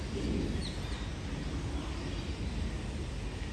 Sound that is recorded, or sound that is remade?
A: recorded